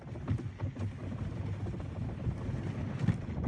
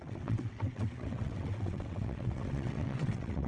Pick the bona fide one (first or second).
first